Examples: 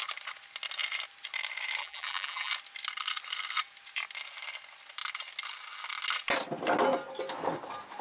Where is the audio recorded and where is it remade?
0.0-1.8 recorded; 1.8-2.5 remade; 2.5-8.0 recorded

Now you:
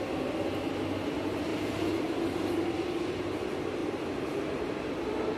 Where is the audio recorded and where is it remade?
0.0-1.5 recorded; 1.5-2.5 remade; 2.5-5.4 recorded

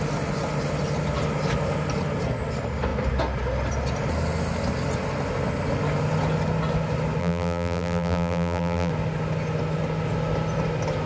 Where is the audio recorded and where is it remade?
0.0-7.2 recorded; 7.2-8.9 remade; 8.9-11.1 recorded

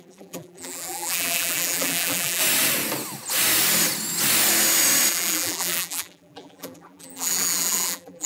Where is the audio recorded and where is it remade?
0.0-2.4 remade; 2.4-5.1 recorded; 5.1-8.3 remade

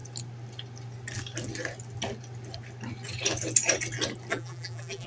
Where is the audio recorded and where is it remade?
0.0-4.3 recorded; 4.3-5.1 remade

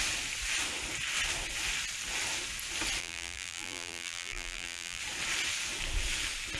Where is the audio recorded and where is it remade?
0.0-3.0 recorded; 3.0-5.0 remade; 5.0-6.6 recorded

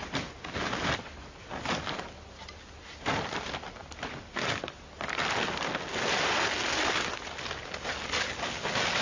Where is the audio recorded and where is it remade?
0.0-0.6 remade; 0.6-3.8 recorded; 3.8-5.0 remade; 5.0-9.0 recorded

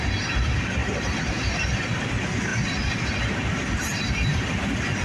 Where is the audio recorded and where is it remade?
0.0-0.8 recorded; 0.8-2.0 remade; 2.0-5.0 recorded